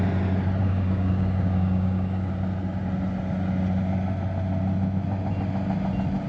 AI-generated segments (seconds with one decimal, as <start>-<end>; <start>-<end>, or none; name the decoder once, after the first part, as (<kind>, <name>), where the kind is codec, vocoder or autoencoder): 0.6-2.3 (codec, DAC)